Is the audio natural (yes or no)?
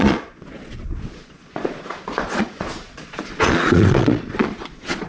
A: no